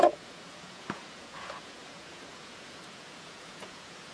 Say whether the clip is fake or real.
fake